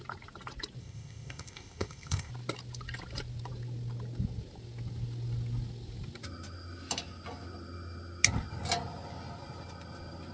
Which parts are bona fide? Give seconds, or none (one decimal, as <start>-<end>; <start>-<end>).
0.0-0.8; 2.3-10.3